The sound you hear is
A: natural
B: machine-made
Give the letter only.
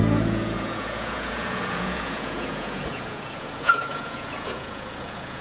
B